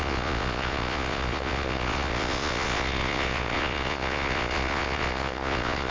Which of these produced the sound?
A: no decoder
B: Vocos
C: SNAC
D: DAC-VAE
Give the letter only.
B